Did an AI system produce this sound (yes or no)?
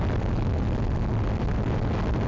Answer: no